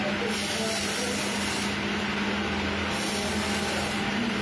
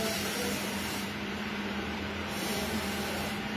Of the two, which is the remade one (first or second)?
second